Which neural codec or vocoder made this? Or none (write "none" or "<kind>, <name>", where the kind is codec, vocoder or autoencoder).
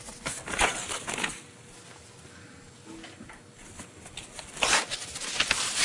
none